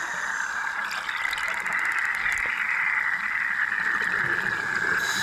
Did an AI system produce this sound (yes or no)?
no